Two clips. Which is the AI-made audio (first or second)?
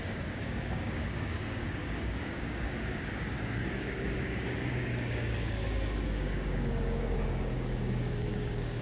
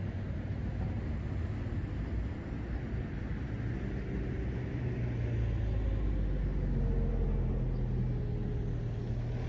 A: first